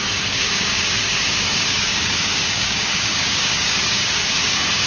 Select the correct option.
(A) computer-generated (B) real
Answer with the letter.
A